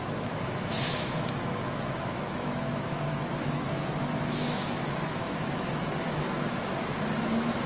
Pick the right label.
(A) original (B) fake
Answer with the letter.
B